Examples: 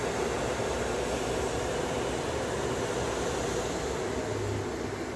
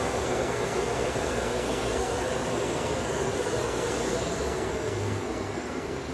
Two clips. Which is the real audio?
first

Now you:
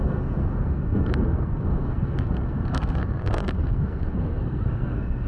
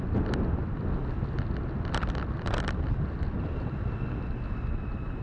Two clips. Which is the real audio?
second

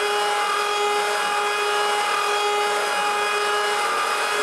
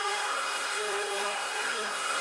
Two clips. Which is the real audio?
first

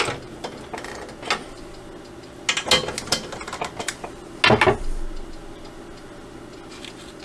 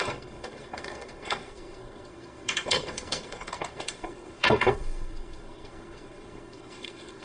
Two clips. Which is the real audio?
first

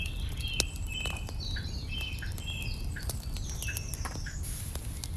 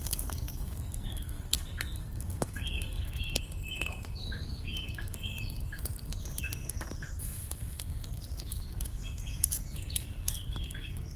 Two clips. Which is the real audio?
first